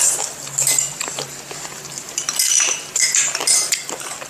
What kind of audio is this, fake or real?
real